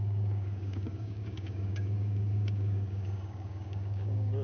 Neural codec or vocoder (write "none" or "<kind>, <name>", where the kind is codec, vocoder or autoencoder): codec, DAC